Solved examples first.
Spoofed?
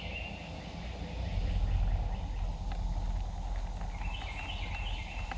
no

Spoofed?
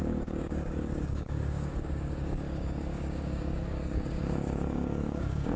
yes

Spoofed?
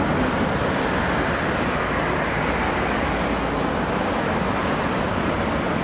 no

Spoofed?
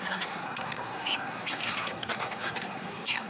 yes